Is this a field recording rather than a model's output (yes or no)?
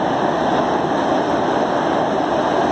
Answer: yes